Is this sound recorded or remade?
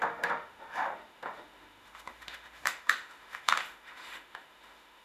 remade